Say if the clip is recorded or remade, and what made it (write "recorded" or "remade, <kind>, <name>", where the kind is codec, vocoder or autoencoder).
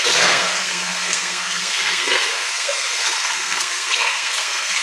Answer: remade, codec, SNAC